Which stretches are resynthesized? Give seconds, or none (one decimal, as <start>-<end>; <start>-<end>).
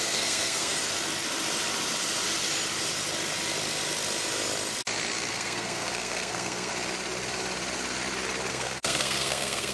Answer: 0.0-0.7; 5.3-6.7; 8.5-9.7